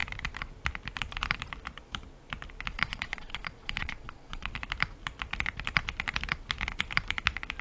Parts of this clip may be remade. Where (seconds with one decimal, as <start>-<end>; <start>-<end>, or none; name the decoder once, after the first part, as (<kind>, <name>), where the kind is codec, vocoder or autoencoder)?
2.7-4.5 (vocoder, Vocos)